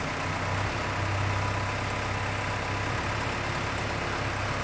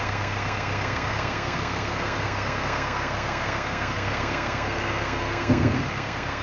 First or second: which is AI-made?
second